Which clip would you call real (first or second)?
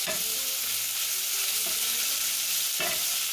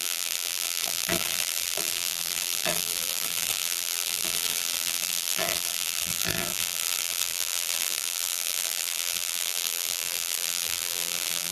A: first